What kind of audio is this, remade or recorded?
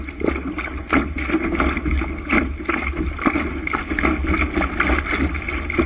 recorded